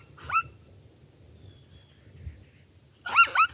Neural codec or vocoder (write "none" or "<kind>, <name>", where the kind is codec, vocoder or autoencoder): none